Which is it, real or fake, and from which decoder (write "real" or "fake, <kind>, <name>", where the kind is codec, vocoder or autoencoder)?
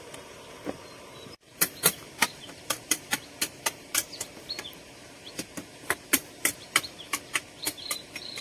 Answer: fake, vocoder, BigVGAN v2